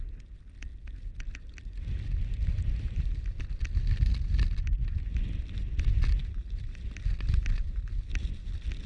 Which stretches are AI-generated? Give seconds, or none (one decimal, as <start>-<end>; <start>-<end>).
6.2-6.9